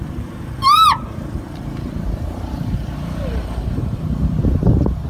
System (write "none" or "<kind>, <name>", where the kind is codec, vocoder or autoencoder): vocoder, BigVGAN v2